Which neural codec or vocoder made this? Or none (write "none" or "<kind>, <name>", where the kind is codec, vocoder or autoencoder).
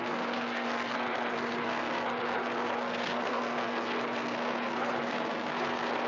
codec, SNAC